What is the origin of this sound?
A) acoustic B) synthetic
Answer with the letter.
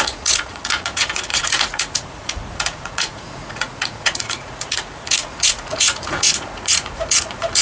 B